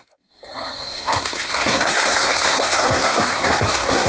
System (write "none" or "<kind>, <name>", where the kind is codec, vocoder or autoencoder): codec, SNAC